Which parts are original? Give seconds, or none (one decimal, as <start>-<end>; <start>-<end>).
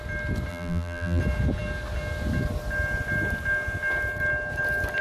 0.0-0.5; 1.2-5.0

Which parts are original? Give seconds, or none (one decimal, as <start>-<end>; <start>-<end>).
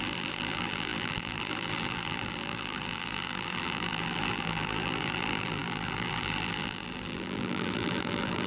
none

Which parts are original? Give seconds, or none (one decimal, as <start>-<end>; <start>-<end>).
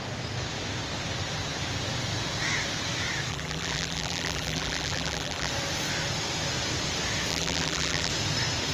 0.0-3.3; 5.5-7.3; 8.1-8.7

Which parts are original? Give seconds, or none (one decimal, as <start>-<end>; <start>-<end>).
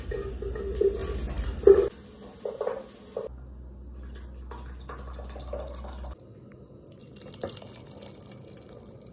0.0-9.1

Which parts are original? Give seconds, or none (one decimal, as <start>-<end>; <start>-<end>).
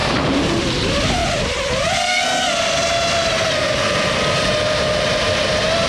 0.0-0.6; 1.2-2.6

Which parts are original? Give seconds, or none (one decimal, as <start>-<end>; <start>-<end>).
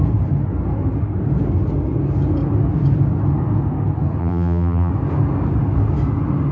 0.0-4.2; 4.9-6.5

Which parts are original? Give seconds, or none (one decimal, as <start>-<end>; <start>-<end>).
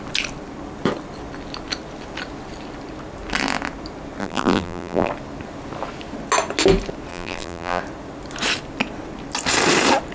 0.0-4.2; 5.1-7.1; 7.8-10.1